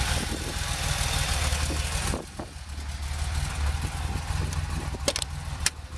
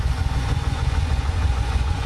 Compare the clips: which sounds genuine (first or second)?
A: first